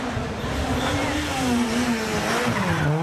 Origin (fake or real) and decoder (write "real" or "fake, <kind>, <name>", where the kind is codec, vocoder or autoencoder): real